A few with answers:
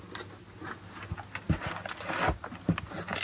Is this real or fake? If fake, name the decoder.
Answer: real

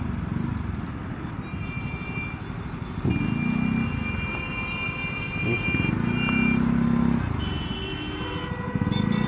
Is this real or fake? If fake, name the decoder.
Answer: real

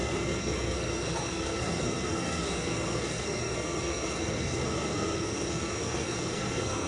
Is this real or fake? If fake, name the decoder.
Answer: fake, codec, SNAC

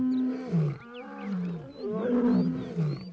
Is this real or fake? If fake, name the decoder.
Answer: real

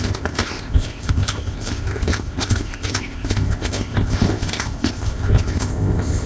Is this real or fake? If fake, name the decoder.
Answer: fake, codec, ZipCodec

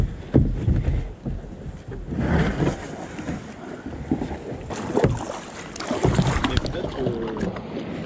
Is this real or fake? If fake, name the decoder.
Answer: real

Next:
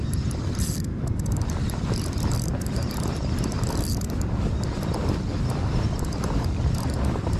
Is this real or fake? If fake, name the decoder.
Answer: fake, vocoder, BigVGAN v2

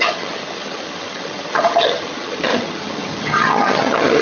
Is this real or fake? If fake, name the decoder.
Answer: fake, vocoder, HiFi-GAN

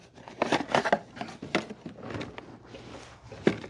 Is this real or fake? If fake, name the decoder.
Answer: real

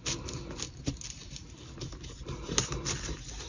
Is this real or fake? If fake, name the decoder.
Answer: real